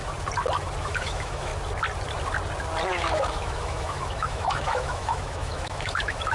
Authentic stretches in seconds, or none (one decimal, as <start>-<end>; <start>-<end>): 0.0-0.8; 1.5-2.9